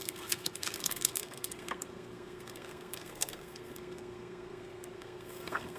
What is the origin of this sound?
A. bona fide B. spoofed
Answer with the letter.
B